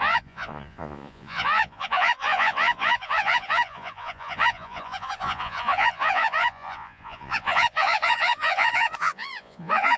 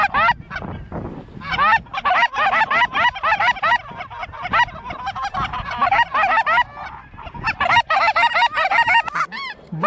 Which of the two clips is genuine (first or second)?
second